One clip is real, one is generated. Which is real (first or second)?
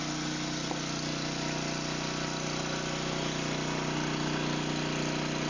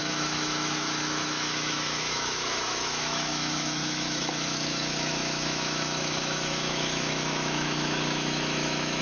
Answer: first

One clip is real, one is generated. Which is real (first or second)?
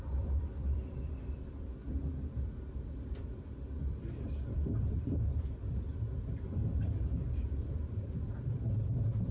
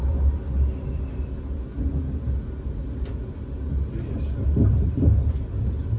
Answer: second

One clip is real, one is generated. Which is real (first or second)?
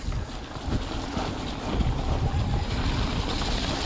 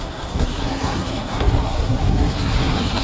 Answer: first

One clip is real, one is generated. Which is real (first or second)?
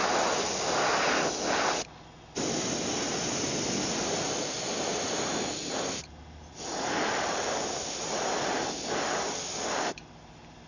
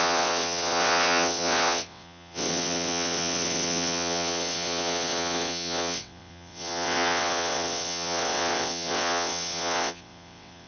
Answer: first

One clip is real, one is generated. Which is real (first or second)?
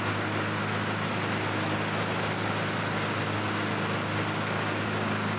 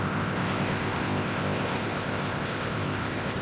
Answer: first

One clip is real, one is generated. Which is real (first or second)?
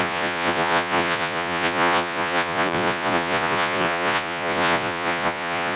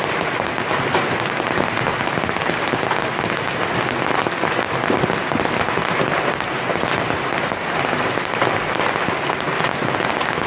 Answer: second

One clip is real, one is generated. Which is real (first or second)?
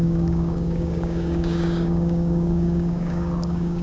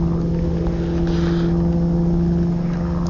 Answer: second